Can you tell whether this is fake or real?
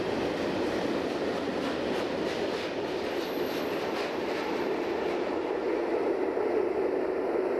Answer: real